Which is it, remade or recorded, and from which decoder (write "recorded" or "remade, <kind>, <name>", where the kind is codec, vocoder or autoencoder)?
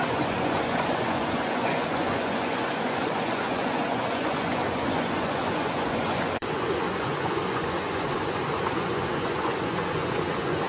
remade, vocoder, Vocos